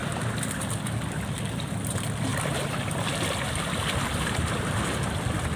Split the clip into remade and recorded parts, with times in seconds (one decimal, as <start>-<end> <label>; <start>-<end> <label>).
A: 0.0-2.3 recorded; 2.3-4.8 remade; 4.8-5.6 recorded